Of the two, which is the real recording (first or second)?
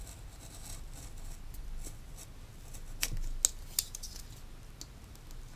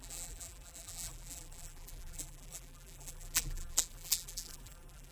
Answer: first